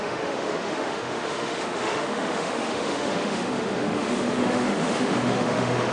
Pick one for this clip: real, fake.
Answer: fake